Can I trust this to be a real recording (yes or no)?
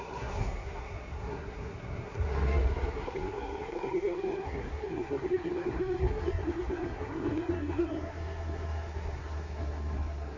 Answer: no